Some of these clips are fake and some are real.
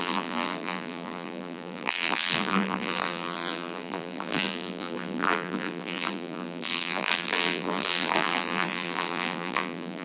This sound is fake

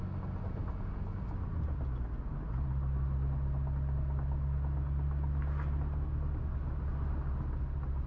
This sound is real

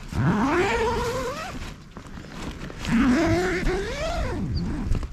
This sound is real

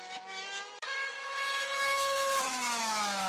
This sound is fake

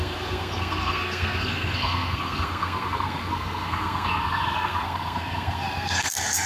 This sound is fake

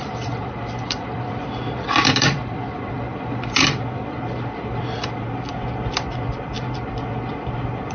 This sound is fake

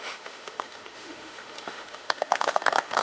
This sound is fake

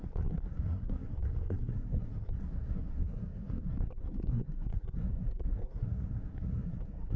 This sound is fake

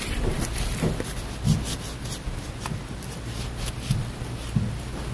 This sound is real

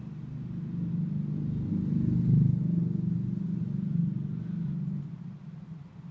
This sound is real